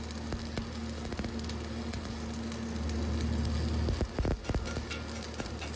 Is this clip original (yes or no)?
yes